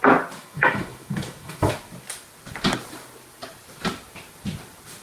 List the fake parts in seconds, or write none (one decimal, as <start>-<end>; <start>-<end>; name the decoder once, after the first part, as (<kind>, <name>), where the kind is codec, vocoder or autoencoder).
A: 0.4-1.7 (autoencoder, DAC-VAE)